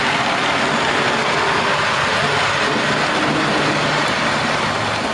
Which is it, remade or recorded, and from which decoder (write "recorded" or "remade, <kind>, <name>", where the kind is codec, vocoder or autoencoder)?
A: recorded